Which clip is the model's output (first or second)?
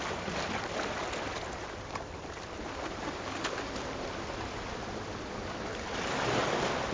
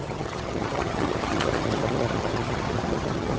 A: second